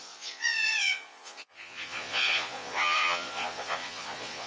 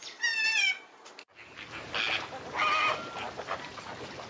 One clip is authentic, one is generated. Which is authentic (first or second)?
second